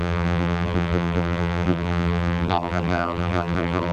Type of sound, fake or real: fake